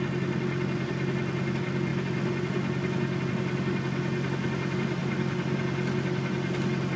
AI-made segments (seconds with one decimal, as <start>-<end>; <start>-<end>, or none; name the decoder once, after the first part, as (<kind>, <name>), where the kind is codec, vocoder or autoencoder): none